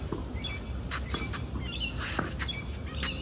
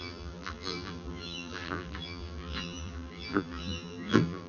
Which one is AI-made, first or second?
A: second